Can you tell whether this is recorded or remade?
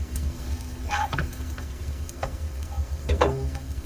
remade